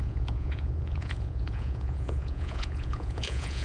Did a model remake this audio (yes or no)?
yes